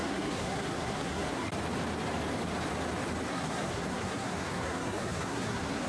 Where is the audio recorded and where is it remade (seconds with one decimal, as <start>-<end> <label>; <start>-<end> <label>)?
0.0-1.5 remade; 1.5-3.3 recorded; 3.3-5.9 remade